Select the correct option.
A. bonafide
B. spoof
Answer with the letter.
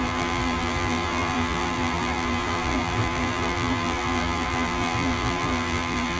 B